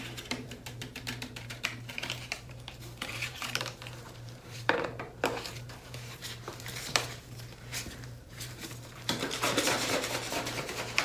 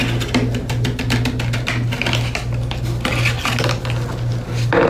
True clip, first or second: second